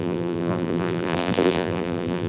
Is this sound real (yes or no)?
no